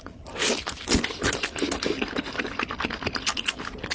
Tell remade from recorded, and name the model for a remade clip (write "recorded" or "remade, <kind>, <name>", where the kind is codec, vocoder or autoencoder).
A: recorded